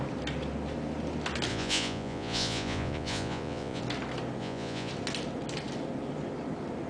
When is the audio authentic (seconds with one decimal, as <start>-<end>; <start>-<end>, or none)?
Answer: 0.0-1.5; 3.8-4.4; 4.9-6.9